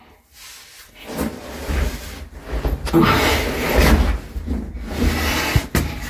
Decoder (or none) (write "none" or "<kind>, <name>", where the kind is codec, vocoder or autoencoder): none